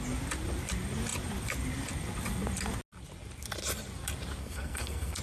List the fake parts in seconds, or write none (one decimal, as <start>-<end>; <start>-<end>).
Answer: 4.4-5.2